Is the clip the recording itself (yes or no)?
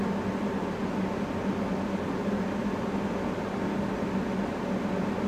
yes